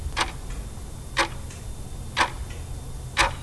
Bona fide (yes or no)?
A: yes